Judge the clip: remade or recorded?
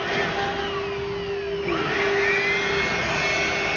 recorded